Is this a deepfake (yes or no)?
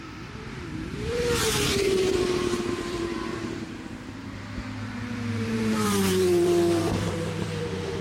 yes